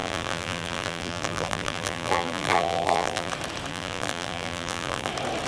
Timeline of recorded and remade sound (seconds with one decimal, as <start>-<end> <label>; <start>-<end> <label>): 0.0-3.3 remade; 3.3-3.7 recorded; 3.7-5.1 remade; 5.1-5.5 recorded